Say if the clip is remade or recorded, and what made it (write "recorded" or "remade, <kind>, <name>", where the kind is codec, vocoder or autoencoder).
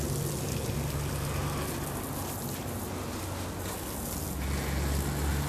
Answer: recorded